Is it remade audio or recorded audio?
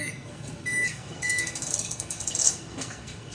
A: remade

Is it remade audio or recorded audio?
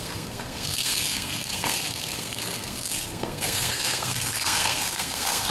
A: remade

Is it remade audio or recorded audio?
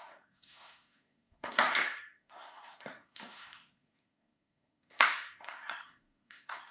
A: remade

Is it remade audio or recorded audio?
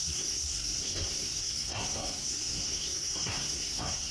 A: remade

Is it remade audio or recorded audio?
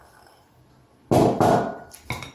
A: recorded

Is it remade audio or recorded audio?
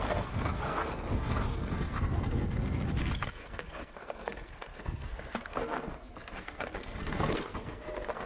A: remade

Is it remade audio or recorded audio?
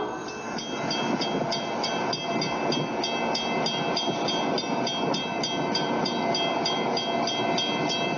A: recorded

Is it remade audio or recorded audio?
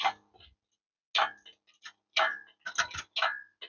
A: recorded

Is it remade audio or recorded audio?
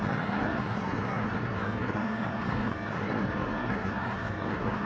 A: remade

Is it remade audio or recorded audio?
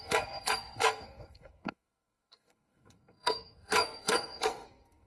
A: remade